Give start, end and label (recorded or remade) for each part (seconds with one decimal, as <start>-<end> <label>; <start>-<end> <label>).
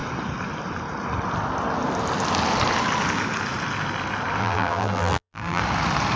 0.0-4.4 recorded; 4.4-5.6 remade; 5.6-6.2 recorded